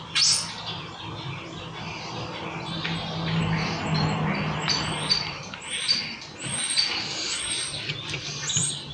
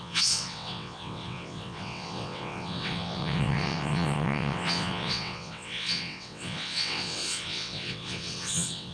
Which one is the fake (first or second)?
second